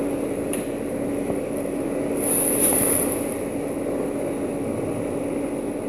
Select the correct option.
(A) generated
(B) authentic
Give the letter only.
B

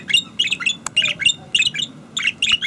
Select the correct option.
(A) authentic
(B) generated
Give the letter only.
A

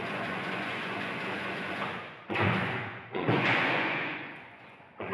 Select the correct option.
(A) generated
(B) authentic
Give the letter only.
A